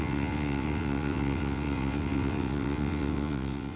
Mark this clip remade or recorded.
remade